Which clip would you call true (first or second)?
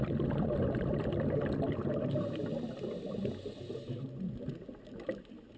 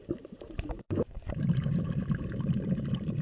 first